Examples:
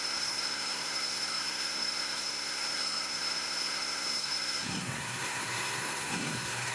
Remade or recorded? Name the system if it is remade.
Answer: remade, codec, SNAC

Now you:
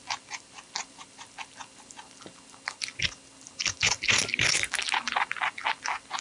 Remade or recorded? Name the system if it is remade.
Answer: recorded